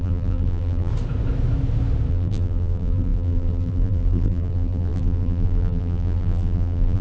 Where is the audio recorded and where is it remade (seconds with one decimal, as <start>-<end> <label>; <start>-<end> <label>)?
0.0-0.9 remade; 0.9-2.1 recorded; 2.1-7.0 remade